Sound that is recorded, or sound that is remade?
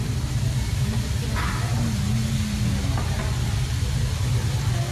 recorded